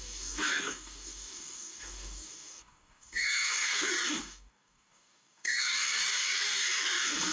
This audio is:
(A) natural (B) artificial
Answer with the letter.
B